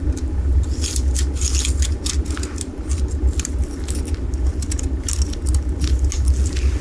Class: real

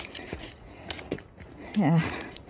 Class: fake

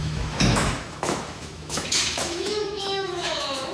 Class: fake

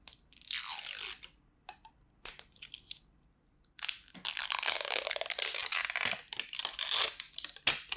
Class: real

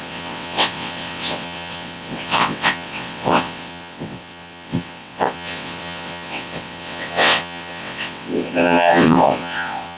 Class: fake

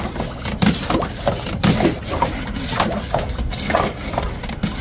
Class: real